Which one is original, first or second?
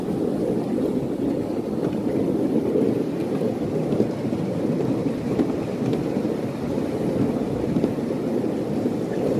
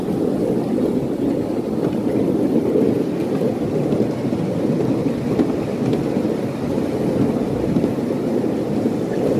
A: second